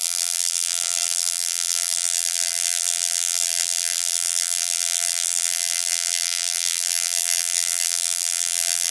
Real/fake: fake